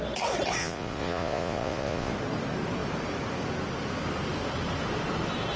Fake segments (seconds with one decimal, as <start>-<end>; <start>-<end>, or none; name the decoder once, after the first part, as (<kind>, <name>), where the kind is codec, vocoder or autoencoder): 0.6-2.1 (vocoder, Vocos)